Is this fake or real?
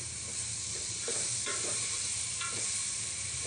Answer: fake